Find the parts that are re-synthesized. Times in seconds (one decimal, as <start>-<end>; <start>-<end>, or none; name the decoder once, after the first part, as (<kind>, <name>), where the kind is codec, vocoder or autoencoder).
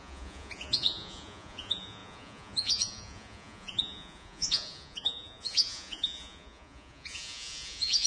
0.0-8.1 (vocoder, Vocos)